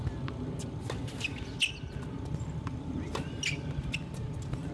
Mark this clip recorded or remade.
recorded